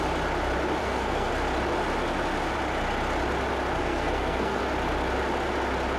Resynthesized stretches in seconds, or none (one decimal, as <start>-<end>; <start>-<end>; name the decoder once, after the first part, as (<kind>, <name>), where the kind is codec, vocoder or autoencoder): 0.8-1.3 (codec, SNAC); 3.8-4.6